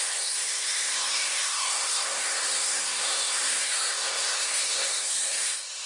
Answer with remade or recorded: remade